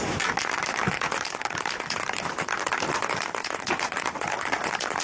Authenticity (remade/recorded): remade